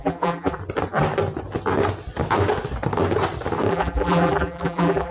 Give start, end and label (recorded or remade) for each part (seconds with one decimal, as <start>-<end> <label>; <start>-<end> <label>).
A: 0.0-0.6 remade; 0.6-3.7 recorded; 3.7-5.1 remade